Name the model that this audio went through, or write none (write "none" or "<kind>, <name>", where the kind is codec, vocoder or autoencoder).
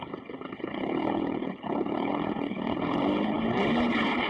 codec, HILCodec